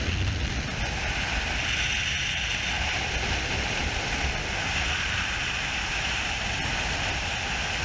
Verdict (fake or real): real